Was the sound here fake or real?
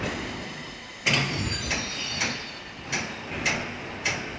real